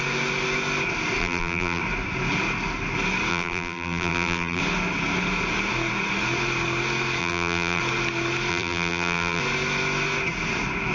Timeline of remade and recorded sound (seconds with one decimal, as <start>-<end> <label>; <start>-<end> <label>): 0.0-1.2 recorded; 1.2-1.8 remade; 1.8-3.3 recorded; 3.3-4.6 remade; 4.6-7.2 recorded; 7.2-7.8 remade; 7.8-8.5 recorded; 8.5-9.4 remade; 9.4-10.9 recorded